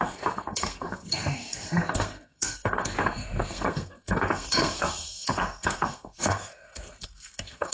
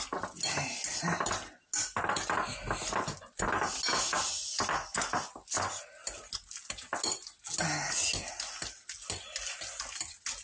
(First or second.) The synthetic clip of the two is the first